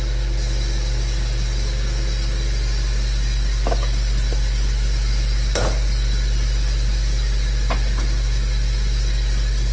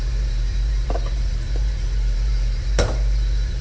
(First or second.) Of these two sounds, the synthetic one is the second